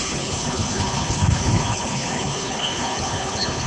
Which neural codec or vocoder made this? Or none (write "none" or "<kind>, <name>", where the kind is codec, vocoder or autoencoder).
codec, HILCodec